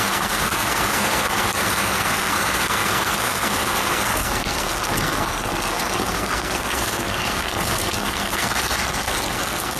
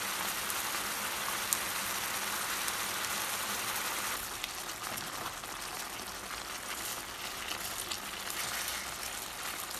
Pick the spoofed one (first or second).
first